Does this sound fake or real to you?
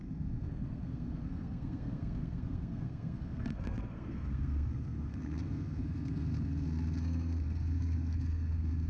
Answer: fake